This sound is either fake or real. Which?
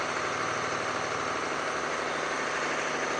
real